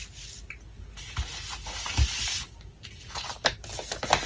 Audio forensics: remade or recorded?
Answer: recorded